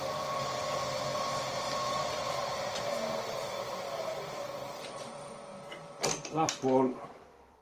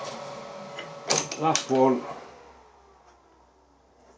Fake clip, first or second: first